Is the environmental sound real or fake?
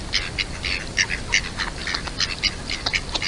real